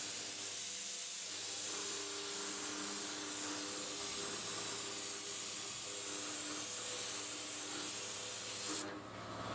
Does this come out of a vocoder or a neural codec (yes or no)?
no